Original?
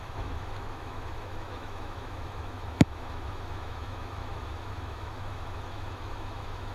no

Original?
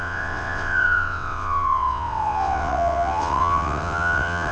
no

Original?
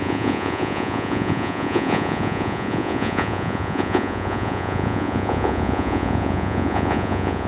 no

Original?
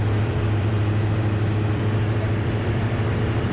no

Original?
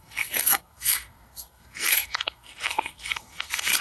no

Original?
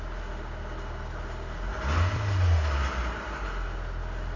yes